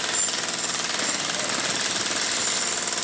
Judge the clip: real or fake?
real